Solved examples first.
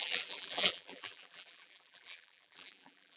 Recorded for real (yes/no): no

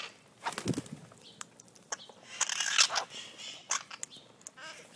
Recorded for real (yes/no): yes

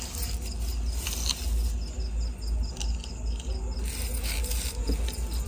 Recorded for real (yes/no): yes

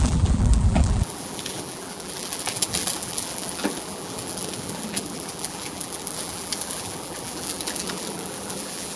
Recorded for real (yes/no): no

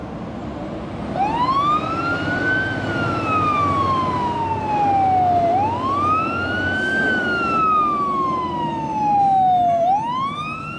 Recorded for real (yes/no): yes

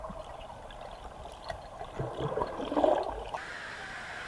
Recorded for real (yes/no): no